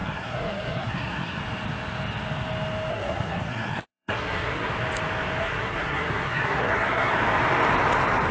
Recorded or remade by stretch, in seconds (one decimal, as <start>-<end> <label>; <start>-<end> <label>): 0.0-1.4 remade; 1.4-2.9 recorded; 2.9-4.7 remade; 4.7-5.4 recorded; 5.4-7.1 remade; 7.1-8.3 recorded